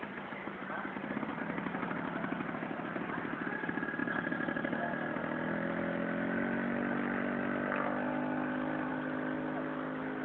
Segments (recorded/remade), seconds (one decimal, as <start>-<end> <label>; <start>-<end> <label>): 0.0-10.2 recorded